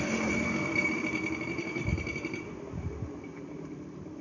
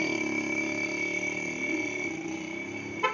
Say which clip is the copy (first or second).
first